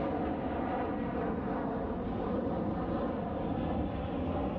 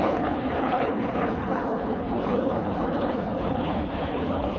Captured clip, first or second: first